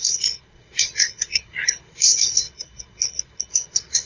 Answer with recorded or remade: remade